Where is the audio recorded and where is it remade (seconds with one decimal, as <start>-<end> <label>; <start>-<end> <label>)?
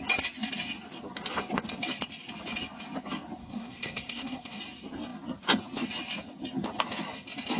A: 0.0-3.4 recorded; 3.4-4.6 remade; 4.6-7.6 recorded